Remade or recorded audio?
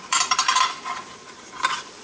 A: remade